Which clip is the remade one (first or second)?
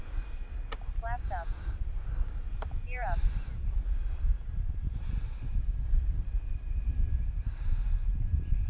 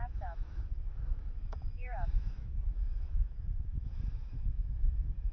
second